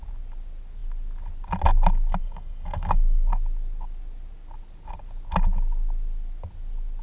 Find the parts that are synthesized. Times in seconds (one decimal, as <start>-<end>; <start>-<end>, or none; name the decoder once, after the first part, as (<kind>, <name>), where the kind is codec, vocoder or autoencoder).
2.2-3.3 (codec, DAC)